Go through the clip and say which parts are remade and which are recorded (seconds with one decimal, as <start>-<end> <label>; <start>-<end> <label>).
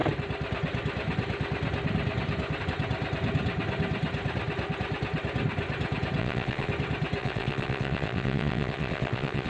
0.0-6.2 recorded; 6.2-6.7 remade; 6.7-7.2 recorded; 7.2-9.5 remade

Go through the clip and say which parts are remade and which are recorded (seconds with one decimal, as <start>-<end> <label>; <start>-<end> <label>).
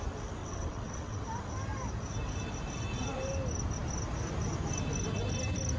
0.0-0.4 recorded; 0.4-1.2 remade; 1.2-5.8 recorded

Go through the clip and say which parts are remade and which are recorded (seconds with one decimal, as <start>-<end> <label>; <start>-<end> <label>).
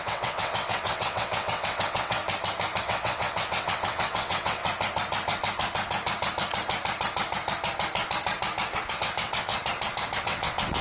0.0-2.2 remade; 2.2-2.8 recorded; 2.8-4.6 remade; 4.6-8.9 recorded; 8.9-9.5 remade; 9.5-10.2 recorded; 10.2-10.8 remade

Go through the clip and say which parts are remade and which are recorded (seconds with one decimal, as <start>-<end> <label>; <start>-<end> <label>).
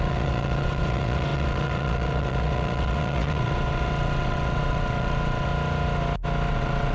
0.0-5.5 remade; 5.5-6.5 recorded; 6.5-6.9 remade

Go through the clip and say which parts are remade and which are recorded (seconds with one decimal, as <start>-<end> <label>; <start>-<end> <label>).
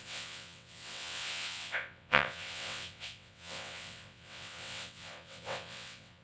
0.0-6.2 remade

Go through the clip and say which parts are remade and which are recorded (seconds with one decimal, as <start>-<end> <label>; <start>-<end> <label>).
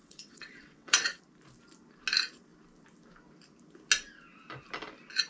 0.0-1.2 remade; 1.2-5.3 recorded